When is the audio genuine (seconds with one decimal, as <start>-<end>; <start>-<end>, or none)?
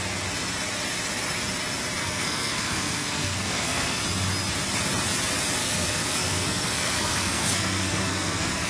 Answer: 0.0-2.0; 4.0-5.6